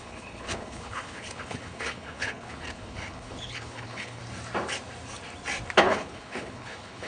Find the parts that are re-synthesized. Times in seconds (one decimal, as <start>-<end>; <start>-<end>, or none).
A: 0.0-4.2; 5.8-7.1